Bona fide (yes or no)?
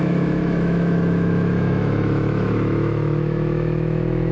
no